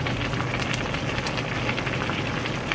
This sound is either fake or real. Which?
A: real